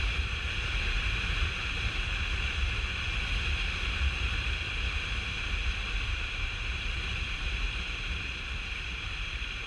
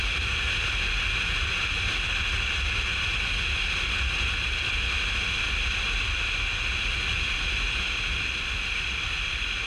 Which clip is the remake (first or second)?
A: first